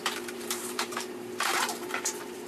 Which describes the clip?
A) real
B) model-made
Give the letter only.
B